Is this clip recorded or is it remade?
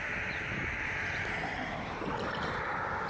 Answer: recorded